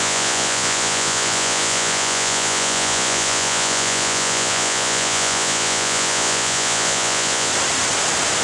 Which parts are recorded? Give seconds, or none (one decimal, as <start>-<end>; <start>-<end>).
7.5-8.4